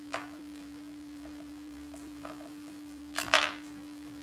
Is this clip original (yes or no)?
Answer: no